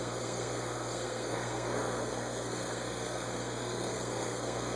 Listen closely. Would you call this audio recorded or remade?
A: remade